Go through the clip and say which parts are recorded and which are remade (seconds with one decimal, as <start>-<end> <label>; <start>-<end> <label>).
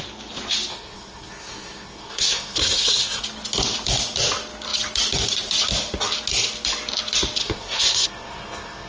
0.0-0.7 recorded; 0.7-3.2 remade; 3.2-7.4 recorded; 7.4-8.9 remade